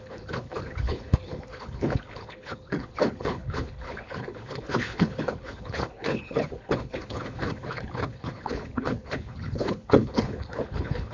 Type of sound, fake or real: fake